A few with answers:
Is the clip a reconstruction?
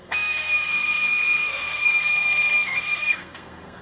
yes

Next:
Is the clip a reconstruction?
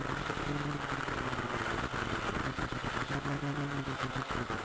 no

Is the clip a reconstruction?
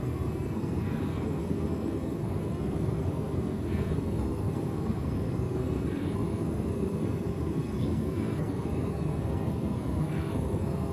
yes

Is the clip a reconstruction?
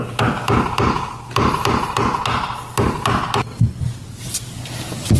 no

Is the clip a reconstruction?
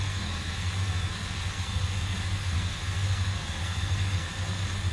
yes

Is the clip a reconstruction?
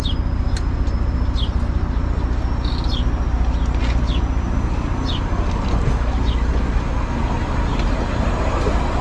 no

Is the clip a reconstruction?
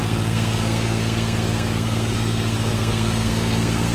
yes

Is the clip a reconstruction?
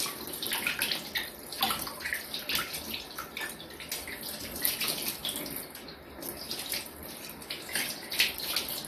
no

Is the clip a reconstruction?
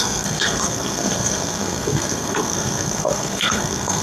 yes